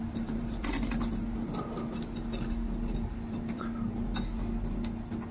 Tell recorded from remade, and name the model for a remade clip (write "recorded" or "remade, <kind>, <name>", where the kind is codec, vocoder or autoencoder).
recorded